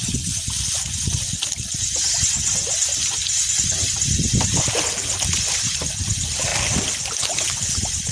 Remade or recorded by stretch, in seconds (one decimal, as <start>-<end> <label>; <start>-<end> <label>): 0.0-8.1 recorded